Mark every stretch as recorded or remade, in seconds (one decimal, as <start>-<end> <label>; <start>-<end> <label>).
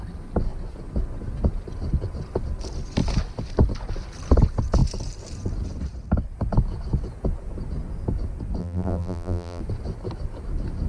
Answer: 0.0-8.6 recorded; 8.6-9.6 remade; 9.6-10.9 recorded